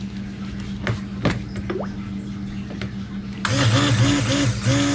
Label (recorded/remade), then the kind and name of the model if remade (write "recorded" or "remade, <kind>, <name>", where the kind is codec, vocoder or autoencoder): recorded